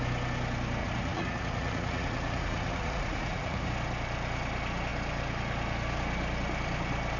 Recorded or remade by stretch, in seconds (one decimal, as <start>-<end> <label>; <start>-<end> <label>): 0.0-0.8 recorded; 0.8-3.7 remade; 3.7-7.2 recorded